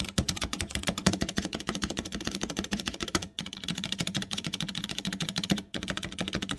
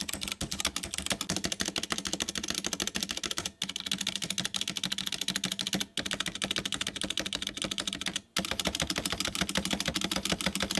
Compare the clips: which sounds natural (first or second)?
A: second